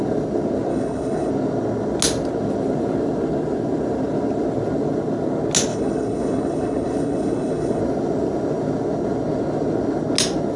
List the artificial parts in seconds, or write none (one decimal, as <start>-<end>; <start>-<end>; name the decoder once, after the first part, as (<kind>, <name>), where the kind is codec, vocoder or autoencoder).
0.7-1.3 (codec, HILCodec); 5.7-7.8